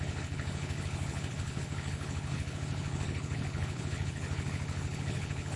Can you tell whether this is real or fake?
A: fake